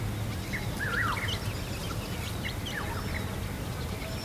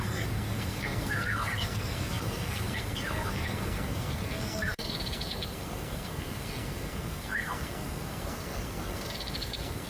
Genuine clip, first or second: first